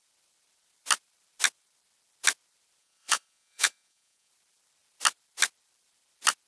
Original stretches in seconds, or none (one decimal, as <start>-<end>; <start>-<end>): 0.0-2.8; 4.3-6.5